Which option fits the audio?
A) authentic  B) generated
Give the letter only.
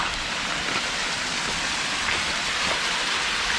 A